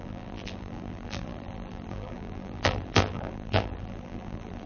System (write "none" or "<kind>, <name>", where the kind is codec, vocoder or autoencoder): vocoder, BigVGAN v2